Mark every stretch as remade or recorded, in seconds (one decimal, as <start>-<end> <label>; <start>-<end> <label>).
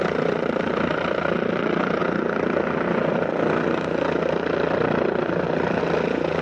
0.0-2.0 remade; 2.0-5.8 recorded; 5.8-6.4 remade